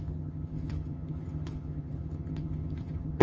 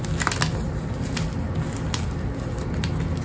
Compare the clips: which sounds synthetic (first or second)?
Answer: first